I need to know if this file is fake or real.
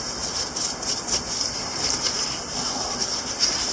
fake